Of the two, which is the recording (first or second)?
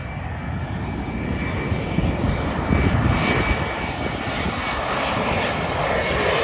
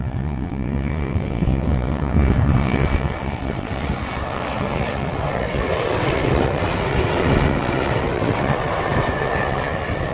first